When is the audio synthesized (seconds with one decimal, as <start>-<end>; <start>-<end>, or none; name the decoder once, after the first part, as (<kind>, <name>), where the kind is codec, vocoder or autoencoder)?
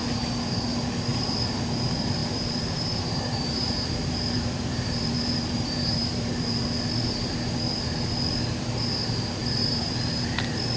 1.1-1.6 (vocoder, BigVGAN v2); 2.2-6.6; 9.4-10.4